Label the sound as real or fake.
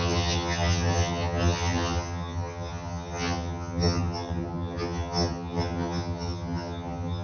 fake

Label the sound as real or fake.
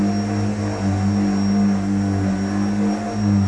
real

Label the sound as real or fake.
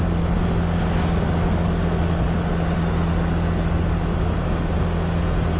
real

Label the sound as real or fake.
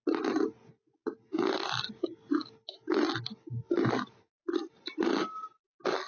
real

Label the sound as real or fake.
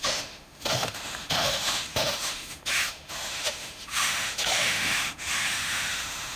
fake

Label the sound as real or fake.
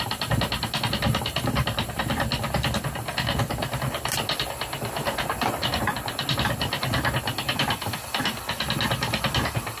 real